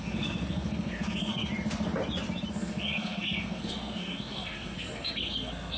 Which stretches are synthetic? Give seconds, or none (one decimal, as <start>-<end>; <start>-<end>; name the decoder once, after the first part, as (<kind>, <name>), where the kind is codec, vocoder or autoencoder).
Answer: 0.0-1.5 (codec, SNAC); 2.5-5.8